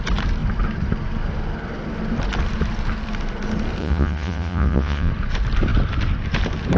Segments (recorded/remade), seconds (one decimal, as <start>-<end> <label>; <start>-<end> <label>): 0.0-3.8 recorded; 3.8-5.1 remade; 5.1-6.8 recorded